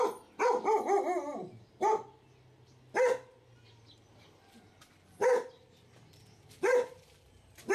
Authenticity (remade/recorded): recorded